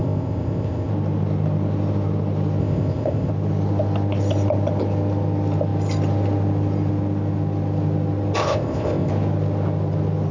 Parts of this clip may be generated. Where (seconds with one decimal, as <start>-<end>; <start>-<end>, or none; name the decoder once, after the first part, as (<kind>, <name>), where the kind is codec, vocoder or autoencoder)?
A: 0.0-0.9 (codec, ZipCodec); 2.6-3.3; 8.4-9.1